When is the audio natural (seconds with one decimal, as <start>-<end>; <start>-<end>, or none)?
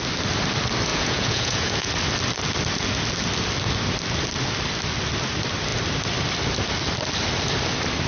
0.0-0.9; 1.9-8.1